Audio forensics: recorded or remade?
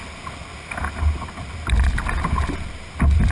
recorded